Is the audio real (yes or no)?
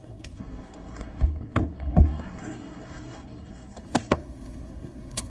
no